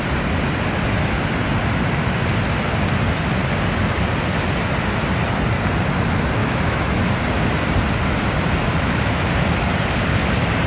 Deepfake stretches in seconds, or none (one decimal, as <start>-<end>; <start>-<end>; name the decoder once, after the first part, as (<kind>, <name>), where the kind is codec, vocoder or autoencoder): 6.4-7.0 (autoencoder, DAC-VAE)